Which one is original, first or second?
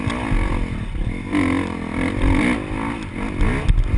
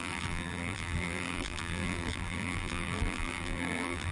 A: first